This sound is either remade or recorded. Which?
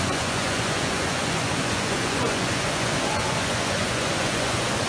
remade